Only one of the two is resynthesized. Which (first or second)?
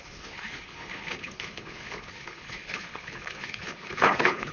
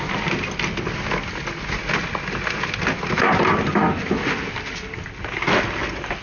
first